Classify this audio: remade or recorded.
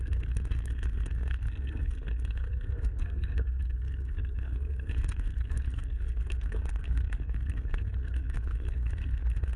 remade